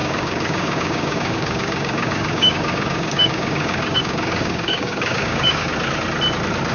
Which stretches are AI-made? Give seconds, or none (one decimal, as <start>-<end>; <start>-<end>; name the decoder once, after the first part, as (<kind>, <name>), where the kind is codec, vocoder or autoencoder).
0.0-5.7 (codec, DAC)